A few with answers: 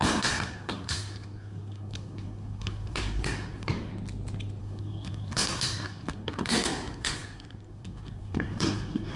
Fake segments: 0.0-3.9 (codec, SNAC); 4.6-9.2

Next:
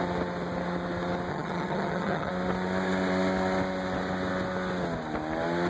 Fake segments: 1.3-2.3 (vocoder, HiFi-GAN)

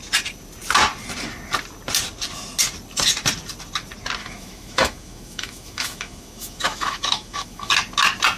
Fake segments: 4.2-7.7 (autoencoder, DAC-VAE)

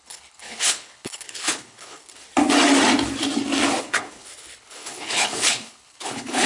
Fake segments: 0.0-2.2 (codec, HILCodec); 3.8-6.5

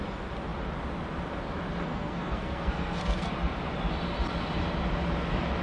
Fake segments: 1.8-3.3 (codec, SNAC)

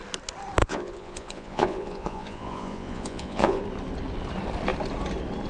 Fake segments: 0.6-3.6 (vocoder, Vocos)